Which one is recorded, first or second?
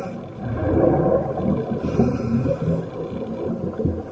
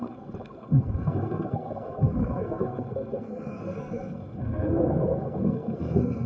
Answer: first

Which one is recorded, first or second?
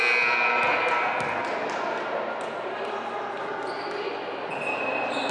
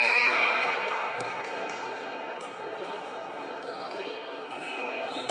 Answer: first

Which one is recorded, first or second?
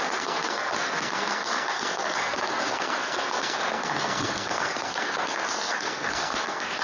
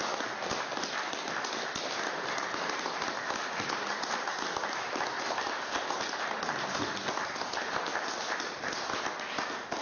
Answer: second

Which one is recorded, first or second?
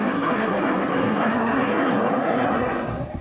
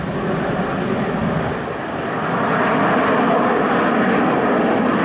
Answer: second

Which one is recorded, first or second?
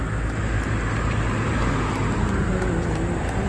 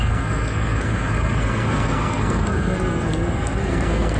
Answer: first